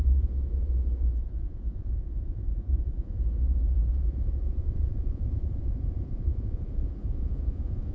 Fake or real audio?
fake